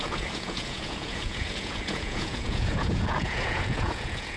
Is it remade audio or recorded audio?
remade